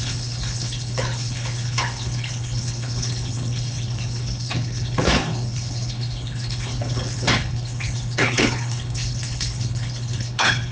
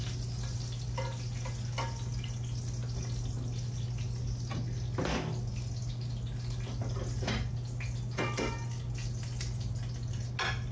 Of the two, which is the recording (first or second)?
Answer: second